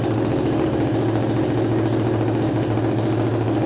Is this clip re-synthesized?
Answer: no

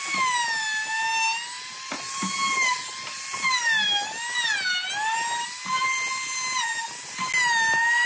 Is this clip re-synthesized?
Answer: no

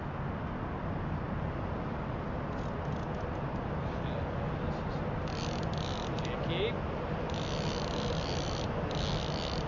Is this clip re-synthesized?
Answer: no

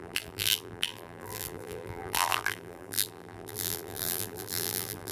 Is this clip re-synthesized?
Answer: yes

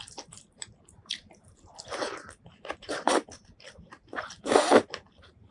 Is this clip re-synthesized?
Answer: yes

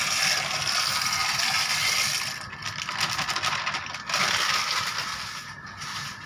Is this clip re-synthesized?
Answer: no